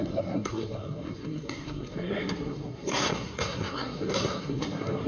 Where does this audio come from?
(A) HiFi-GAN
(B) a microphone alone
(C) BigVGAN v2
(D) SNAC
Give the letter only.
D